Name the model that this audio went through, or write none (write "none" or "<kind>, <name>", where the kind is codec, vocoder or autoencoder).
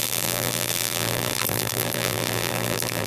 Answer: vocoder, BigVGAN v2